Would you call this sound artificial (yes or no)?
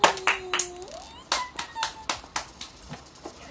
no